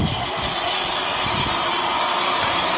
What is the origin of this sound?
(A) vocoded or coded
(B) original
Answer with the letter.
B